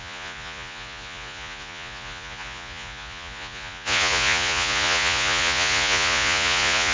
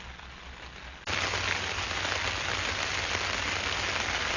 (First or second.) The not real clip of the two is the first